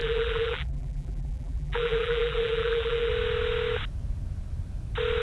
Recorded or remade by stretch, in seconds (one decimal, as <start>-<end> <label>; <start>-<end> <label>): 0.0-3.1 remade; 3.1-5.2 recorded